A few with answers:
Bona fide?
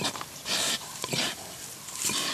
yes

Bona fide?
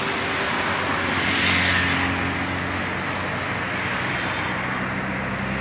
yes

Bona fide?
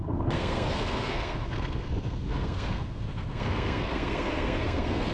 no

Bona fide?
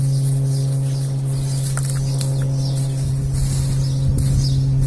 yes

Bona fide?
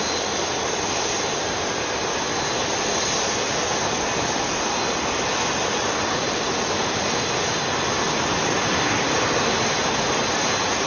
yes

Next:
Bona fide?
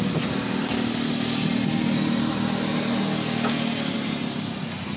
yes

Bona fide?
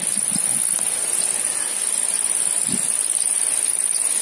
yes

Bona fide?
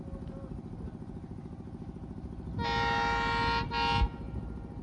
yes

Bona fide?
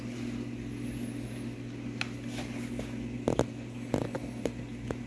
yes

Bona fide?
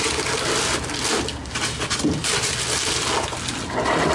yes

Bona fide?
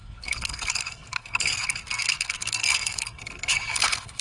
no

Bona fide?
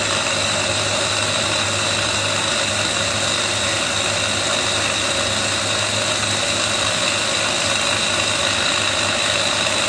yes